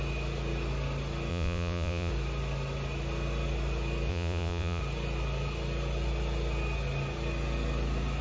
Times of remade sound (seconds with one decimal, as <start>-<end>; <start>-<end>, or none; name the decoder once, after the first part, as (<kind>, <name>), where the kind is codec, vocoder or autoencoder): 1.3-2.1 (vocoder, Vocos); 4.1-4.8